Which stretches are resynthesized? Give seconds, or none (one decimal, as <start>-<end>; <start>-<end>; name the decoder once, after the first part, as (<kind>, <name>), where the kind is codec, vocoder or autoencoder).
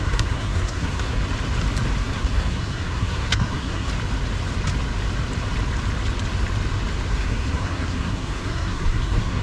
0.0-1.2 (codec, SNAC); 2.0-3.9; 7.1-9.4